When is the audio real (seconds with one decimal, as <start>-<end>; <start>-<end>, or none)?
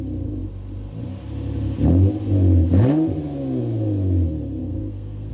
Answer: 0.0-4.6